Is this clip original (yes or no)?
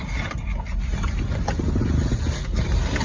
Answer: yes